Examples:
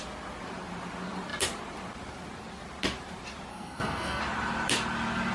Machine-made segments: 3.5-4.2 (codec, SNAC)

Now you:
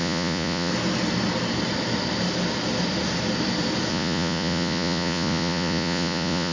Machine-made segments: 0.0-0.7 (vocoder, Vocos); 3.9-6.5